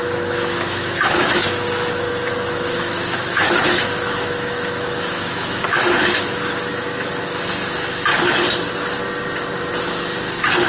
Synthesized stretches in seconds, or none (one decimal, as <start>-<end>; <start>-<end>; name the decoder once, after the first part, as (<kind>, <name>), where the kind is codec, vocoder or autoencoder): 0.0-8.1 (autoencoder, DAC-VAE)